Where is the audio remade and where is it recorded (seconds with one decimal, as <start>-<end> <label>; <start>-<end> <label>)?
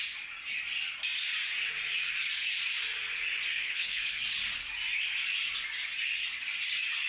0.0-3.5 recorded; 3.5-4.2 remade; 4.2-7.1 recorded